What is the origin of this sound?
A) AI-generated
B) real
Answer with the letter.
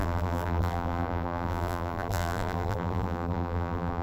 A